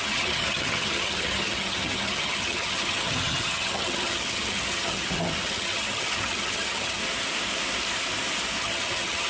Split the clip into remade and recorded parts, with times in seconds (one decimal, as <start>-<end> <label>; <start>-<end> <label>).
0.0-7.0 remade; 7.0-8.6 recorded; 8.6-9.3 remade